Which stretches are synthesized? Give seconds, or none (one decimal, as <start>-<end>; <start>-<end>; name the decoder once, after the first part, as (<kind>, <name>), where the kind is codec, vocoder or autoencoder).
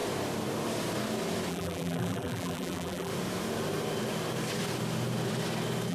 1.5-3.1 (vocoder, BigVGAN v2)